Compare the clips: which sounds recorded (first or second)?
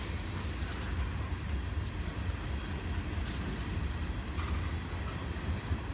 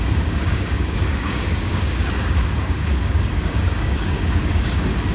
first